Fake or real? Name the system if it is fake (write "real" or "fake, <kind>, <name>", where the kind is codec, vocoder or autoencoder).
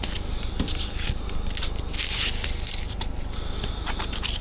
real